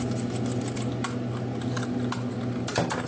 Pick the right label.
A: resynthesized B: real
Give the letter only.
B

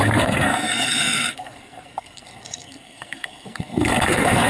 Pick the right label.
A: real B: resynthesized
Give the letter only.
B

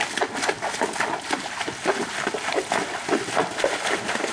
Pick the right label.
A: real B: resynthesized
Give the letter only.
A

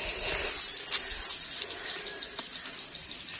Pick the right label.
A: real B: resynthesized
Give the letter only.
A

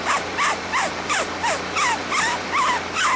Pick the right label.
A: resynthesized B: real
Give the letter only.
B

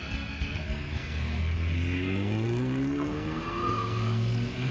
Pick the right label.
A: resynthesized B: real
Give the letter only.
A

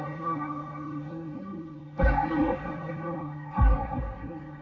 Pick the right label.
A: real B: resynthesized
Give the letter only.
B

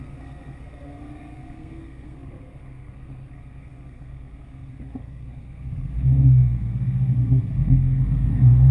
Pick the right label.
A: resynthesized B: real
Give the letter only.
A